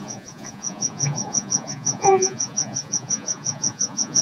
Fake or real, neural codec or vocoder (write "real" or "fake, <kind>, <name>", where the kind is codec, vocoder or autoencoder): fake, vocoder, Vocos